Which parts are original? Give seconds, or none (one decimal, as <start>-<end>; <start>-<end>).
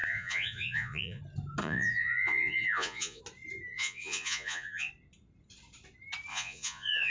1.2-1.6; 3.2-3.7; 4.9-6.3